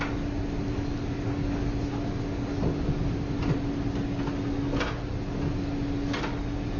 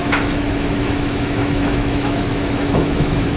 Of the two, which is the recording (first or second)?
first